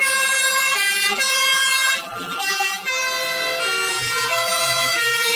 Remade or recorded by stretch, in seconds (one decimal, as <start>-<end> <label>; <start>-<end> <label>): 0.0-3.0 remade; 3.0-3.9 recorded; 3.9-5.4 remade